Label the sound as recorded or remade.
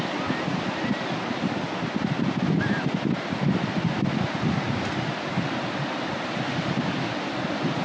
recorded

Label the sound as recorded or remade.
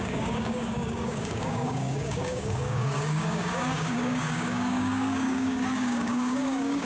remade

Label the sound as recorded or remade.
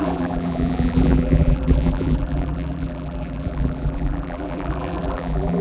remade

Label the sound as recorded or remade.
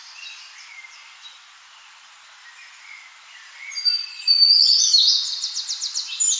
recorded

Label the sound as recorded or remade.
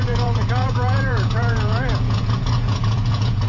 remade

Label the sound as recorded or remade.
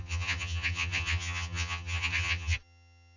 remade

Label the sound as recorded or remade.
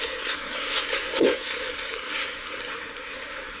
remade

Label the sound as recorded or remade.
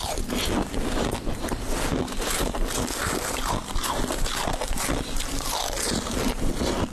recorded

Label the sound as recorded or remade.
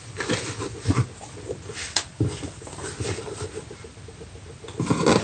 recorded